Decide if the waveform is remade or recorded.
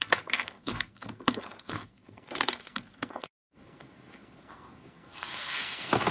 remade